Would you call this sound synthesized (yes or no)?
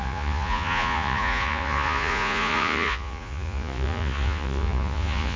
yes